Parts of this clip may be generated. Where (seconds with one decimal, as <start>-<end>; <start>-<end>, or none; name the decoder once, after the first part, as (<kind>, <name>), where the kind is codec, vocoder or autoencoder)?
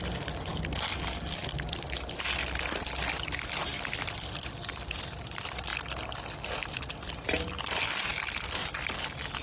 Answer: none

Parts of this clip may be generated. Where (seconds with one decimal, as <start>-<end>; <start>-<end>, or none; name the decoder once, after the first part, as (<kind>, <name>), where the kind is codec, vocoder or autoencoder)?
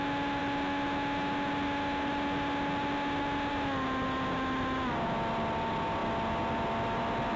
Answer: none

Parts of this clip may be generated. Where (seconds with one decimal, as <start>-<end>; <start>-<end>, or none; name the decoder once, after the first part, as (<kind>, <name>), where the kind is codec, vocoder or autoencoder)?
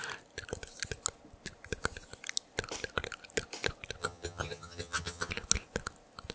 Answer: 4.0-5.3 (vocoder, HiFi-GAN)